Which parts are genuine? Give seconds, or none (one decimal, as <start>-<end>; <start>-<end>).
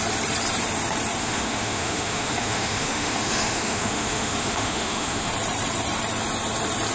0.0-1.2; 5.3-6.9